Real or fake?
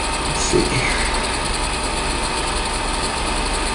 real